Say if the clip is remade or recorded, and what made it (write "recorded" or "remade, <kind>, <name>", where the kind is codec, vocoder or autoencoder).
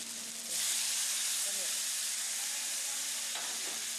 recorded